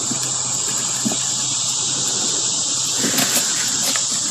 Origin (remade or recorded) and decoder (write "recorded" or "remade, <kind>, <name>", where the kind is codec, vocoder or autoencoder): recorded